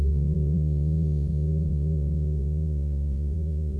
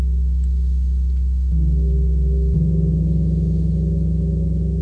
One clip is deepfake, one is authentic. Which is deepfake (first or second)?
first